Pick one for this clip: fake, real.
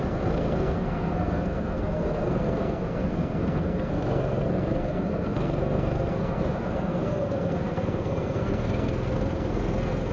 fake